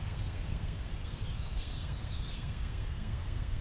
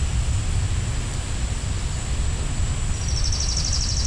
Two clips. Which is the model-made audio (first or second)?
first